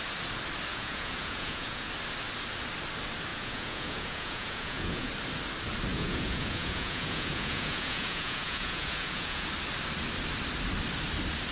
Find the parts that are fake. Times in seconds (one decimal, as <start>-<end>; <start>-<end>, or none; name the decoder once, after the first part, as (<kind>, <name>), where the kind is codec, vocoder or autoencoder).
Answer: 0.7-1.9 (vocoder, Vocos); 3.3-5.1; 5.9-9.5